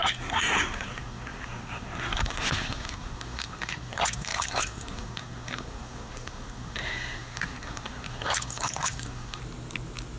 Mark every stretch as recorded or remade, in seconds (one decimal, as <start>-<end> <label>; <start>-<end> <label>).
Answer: 0.0-9.4 remade; 9.4-10.2 recorded

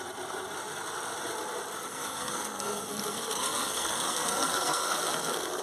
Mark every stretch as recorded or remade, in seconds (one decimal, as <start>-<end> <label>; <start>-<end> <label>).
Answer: 0.0-1.9 recorded; 1.9-5.6 remade

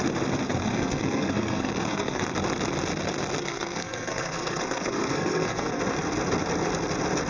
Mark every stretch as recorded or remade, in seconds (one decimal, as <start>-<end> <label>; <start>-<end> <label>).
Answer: 0.0-0.6 recorded; 0.6-2.2 remade; 2.2-3.4 recorded; 3.4-5.8 remade; 5.8-7.3 recorded

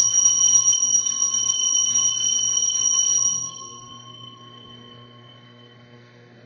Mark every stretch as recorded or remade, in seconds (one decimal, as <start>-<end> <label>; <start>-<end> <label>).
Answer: 0.0-6.5 remade

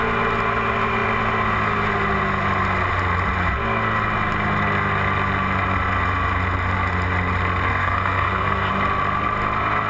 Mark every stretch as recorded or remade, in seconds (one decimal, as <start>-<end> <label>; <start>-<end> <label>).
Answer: 0.0-7.7 recorded; 7.7-8.7 remade; 8.7-9.9 recorded

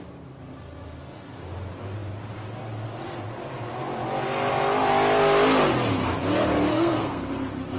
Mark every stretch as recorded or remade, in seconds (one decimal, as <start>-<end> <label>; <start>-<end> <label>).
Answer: 0.0-6.7 recorded; 6.7-7.3 remade; 7.3-7.8 recorded

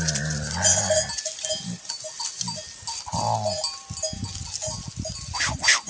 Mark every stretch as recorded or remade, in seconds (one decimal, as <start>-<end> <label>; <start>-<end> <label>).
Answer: 0.0-5.9 recorded

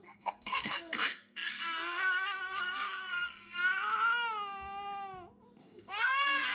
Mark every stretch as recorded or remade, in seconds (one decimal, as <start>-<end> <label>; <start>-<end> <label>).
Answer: 0.0-3.6 remade; 3.6-5.6 recorded; 5.6-6.5 remade